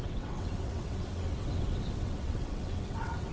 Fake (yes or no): yes